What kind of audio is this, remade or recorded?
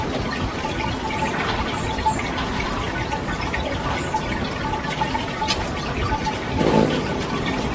recorded